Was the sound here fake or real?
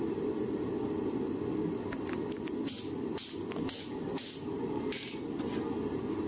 real